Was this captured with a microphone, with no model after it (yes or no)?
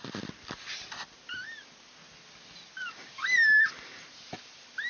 yes